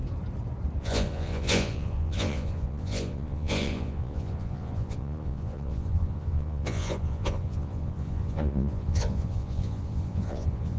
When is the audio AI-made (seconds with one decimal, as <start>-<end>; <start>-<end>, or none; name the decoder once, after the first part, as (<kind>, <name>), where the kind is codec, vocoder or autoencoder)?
0.8-10.8 (vocoder, Vocos)